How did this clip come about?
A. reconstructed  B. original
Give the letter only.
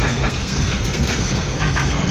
A